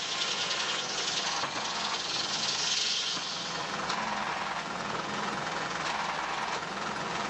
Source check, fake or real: fake